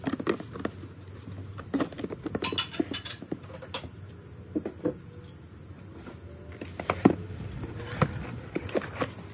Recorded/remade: recorded